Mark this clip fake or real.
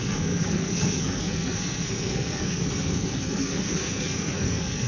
fake